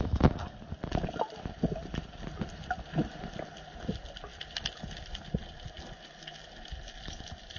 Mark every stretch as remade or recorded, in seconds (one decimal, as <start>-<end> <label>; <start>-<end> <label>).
0.0-7.6 recorded